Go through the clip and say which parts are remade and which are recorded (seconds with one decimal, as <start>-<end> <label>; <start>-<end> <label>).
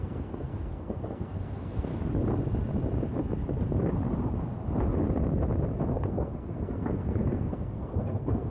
0.0-1.9 remade; 1.9-5.8 recorded; 5.8-8.5 remade